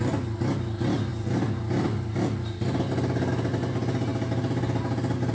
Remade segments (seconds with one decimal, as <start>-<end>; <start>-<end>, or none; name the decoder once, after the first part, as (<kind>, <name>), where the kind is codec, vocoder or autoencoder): none